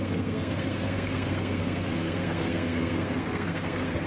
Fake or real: fake